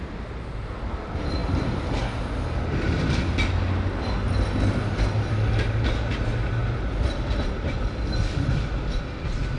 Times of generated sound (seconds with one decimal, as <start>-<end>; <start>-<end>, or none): none